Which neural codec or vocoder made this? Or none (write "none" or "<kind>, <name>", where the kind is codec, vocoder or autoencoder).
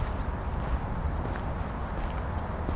none